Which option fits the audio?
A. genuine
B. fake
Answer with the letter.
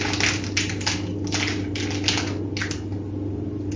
A